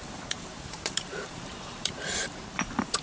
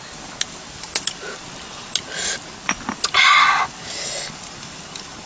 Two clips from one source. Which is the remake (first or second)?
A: first